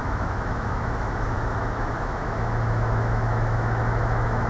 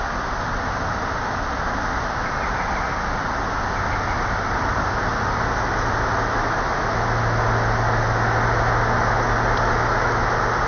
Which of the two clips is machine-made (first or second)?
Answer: first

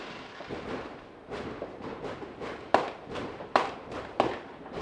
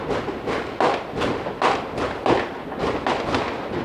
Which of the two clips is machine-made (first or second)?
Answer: first